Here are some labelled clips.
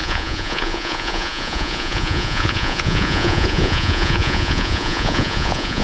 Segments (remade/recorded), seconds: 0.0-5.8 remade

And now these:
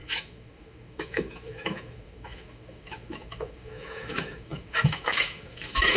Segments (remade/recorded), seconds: 0.0-6.0 remade